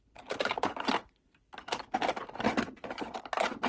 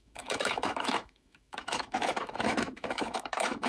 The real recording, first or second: first